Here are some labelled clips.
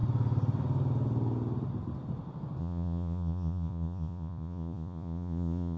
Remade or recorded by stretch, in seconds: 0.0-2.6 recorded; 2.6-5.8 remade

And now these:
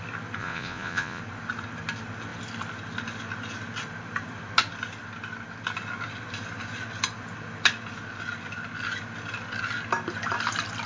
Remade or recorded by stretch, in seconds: 0.0-0.4 recorded; 0.4-1.2 remade; 1.2-10.9 recorded

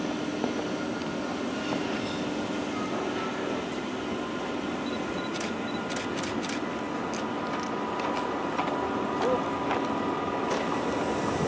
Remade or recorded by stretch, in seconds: 0.0-11.5 recorded

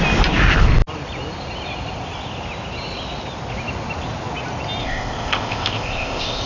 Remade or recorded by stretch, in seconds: 0.0-4.8 recorded; 4.8-6.5 remade

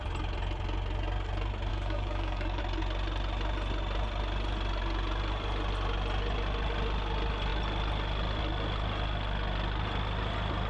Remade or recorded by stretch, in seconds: 0.0-1.7 recorded; 1.7-2.6 remade; 2.6-10.7 recorded

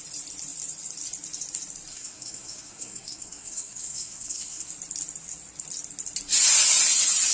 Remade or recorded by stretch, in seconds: 0.0-1.9 recorded; 1.9-4.7 remade; 4.7-7.3 recorded